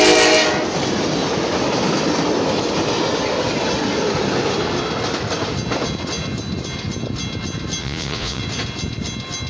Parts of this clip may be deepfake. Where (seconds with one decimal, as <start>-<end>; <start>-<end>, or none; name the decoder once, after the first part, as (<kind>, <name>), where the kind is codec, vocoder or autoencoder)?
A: 7.8-8.4 (vocoder, Vocos)